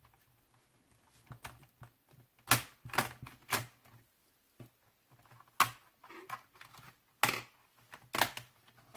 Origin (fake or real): real